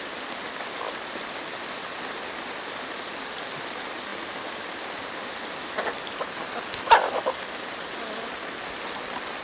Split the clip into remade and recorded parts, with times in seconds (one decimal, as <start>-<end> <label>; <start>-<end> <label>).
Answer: 0.0-9.4 recorded